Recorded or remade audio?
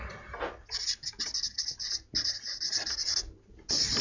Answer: recorded